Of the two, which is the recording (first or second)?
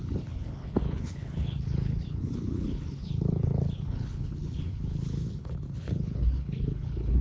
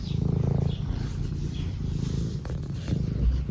second